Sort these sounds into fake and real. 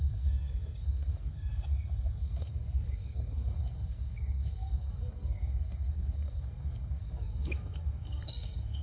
fake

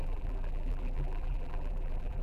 fake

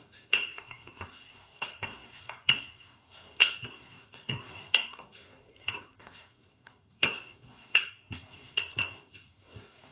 fake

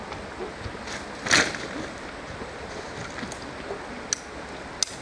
real